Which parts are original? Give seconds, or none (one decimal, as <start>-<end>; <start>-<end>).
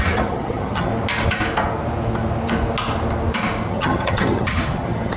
0.9-3.7